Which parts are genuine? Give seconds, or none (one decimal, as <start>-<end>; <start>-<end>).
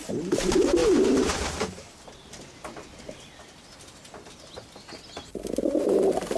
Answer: 0.0-0.8; 1.6-6.4